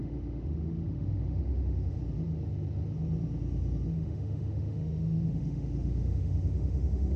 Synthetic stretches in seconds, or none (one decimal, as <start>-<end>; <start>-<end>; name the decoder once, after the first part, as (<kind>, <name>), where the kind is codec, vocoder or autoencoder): 0.0-2.0 (autoencoder, DAC-VAE); 3.9-7.2